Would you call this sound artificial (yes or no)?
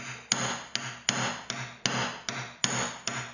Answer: no